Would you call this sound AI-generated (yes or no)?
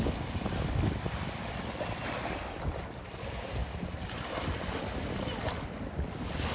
no